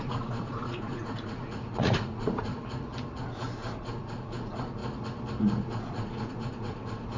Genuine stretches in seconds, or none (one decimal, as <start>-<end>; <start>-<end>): 2.5-3.2; 4.8-5.4